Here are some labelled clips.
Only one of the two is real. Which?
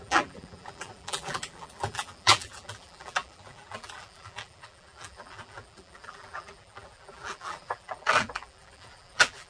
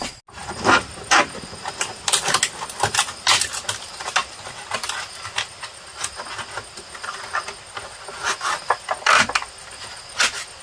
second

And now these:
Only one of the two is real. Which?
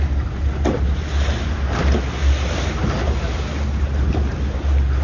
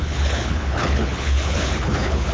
first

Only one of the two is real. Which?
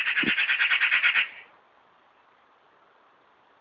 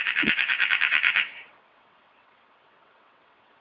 first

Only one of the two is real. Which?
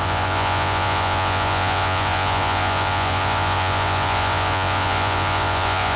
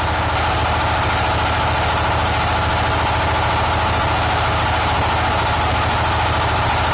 second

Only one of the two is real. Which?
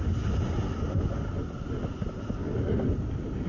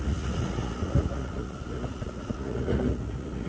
first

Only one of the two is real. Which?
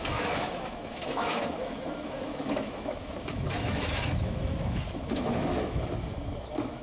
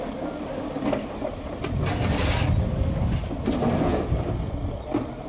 second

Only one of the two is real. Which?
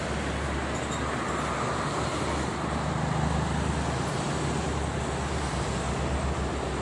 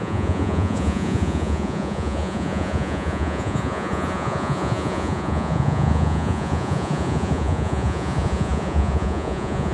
first